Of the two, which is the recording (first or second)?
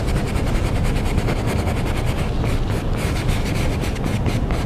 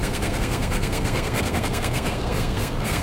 first